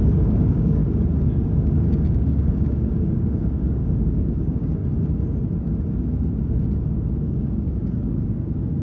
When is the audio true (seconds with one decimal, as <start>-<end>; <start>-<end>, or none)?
0.8-1.5; 4.8-7.2